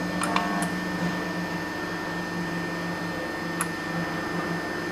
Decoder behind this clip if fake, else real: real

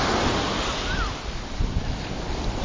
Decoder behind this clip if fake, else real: real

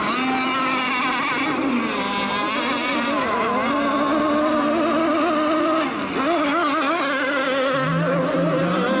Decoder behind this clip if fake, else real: real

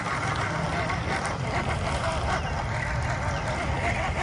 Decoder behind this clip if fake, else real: real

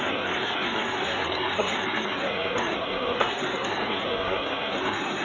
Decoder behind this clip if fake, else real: fake, codec, SNAC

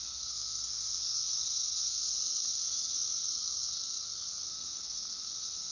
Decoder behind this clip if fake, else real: fake, codec, SNAC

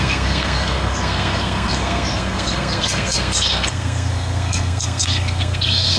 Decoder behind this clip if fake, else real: fake, codec, SNAC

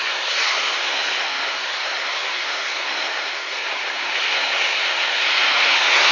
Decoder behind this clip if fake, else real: fake, codec, SNAC